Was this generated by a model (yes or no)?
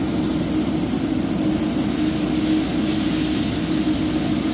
no